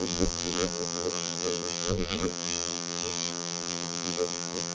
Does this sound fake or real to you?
fake